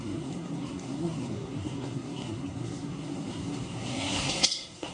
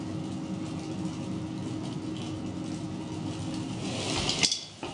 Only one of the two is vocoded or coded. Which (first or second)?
first